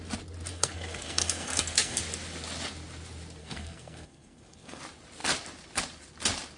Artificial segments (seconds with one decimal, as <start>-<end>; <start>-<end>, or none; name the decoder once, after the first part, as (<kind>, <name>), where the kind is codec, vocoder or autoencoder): 0.5-2.0 (codec, SNAC); 3.4-4.8